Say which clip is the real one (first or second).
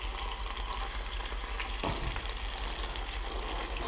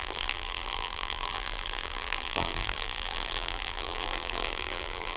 first